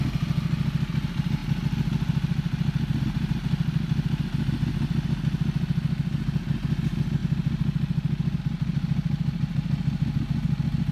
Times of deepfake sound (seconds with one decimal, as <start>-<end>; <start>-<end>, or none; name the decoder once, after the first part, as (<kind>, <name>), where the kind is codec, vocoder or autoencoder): none